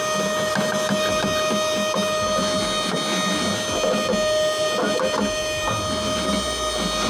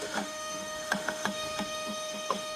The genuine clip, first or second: first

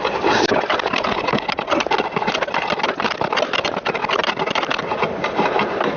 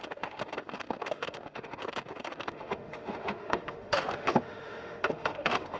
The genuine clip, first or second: first